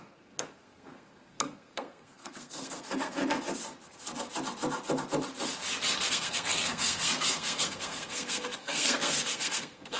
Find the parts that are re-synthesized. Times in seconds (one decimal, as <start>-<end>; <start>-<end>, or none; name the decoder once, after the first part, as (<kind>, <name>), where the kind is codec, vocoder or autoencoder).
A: 0.0-3.2 (codec, SNAC); 6.1-10.0